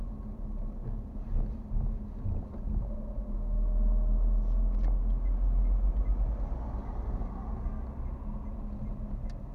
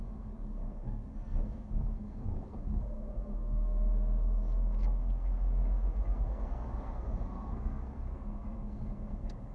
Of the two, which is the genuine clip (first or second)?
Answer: first